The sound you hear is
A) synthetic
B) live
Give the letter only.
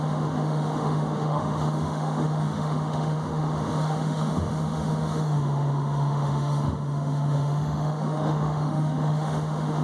A